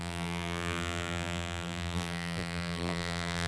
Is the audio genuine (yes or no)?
no